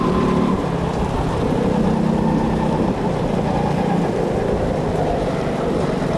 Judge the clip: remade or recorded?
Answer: recorded